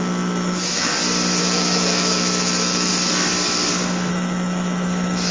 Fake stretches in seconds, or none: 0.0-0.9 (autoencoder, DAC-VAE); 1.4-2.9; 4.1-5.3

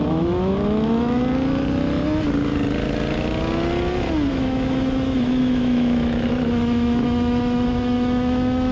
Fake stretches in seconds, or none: 0.0-1.2 (autoencoder, DAC-VAE); 4.3-8.7

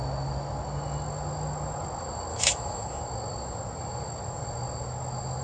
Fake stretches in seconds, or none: 2.3-3.0 (autoencoder, DAC-VAE)